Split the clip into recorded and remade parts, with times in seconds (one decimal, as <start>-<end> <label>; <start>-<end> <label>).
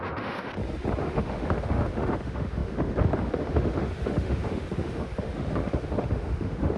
0.0-0.5 remade; 0.5-1.0 recorded; 1.0-6.8 remade